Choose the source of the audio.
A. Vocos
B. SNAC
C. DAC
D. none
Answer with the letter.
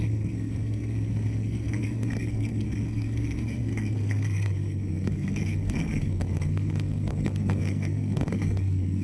B